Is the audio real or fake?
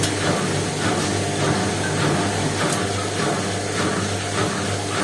real